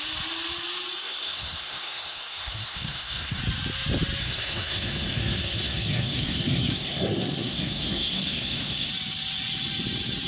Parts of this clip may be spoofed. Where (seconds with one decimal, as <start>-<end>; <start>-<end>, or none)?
1.0-3.4; 4.2-8.9